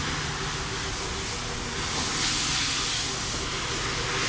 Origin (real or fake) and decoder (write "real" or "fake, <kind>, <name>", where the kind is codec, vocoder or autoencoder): real